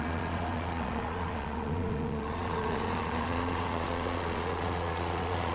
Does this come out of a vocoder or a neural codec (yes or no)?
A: yes